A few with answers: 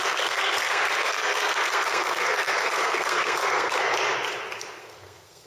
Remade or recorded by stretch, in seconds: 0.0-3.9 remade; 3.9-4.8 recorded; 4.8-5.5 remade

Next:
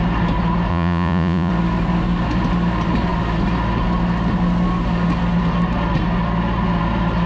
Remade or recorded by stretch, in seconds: 0.0-0.7 recorded; 0.7-1.5 remade; 1.5-7.3 recorded

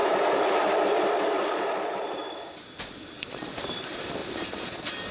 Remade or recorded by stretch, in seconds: 0.0-0.5 remade; 0.5-1.4 recorded; 1.4-2.2 remade; 2.2-3.0 recorded; 3.0-3.5 remade; 3.5-5.1 recorded

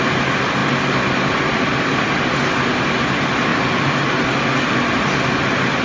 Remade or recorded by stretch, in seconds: 0.0-5.8 recorded

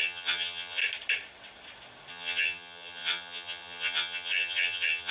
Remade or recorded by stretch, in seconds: 0.0-0.8 remade; 0.8-2.1 recorded; 2.1-5.1 remade

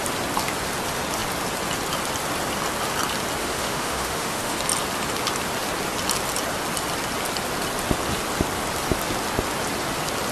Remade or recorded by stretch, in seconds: 0.0-3.4 recorded; 3.4-4.6 remade; 4.6-10.3 recorded